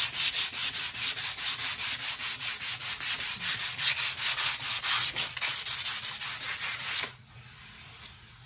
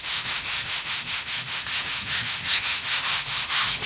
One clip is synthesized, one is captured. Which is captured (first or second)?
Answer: first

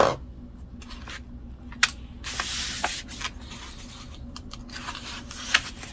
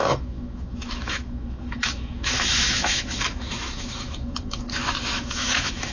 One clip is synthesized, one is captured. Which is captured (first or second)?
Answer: first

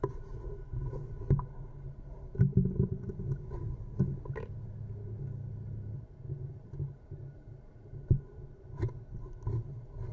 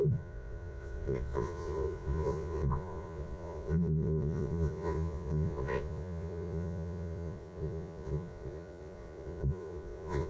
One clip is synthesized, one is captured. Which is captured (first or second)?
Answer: first